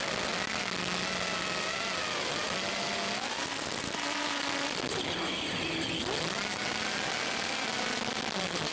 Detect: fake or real real